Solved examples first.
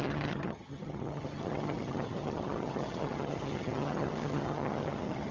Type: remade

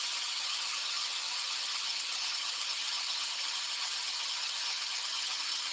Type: remade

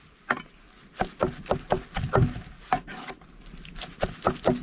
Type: recorded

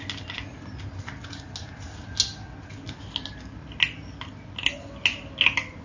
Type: recorded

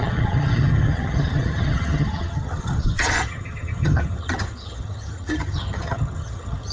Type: remade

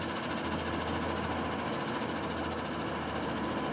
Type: recorded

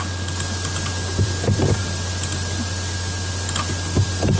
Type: recorded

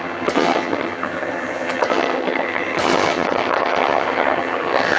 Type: remade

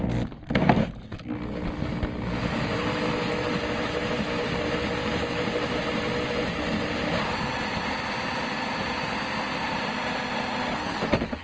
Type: recorded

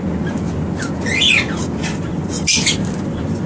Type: recorded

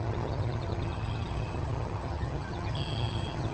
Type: remade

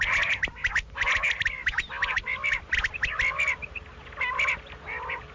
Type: recorded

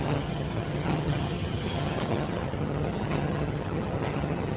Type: remade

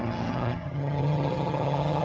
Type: remade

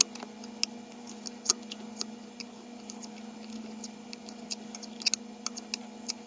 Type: recorded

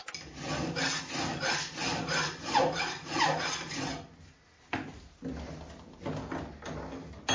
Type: recorded